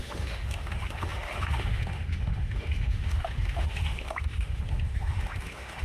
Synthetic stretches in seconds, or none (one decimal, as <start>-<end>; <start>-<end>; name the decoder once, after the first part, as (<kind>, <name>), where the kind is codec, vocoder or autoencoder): 0.0-5.8 (autoencoder, DAC-VAE)